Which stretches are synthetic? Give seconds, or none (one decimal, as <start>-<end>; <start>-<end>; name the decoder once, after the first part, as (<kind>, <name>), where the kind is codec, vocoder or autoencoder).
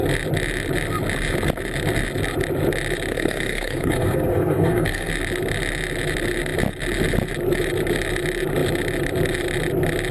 3.1-5.1 (codec, SNAC)